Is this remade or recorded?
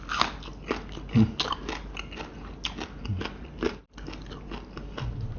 recorded